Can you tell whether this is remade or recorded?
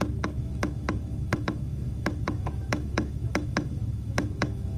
remade